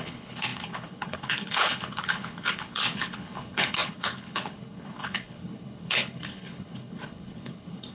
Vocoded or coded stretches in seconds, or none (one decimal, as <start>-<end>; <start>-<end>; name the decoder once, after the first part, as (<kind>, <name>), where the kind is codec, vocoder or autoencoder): 0.0-7.9 (codec, HILCodec)